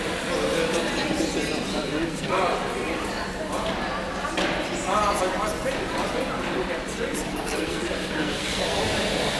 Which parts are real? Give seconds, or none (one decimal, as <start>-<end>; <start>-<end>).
0.0-1.7; 2.3-7.3; 8.8-9.4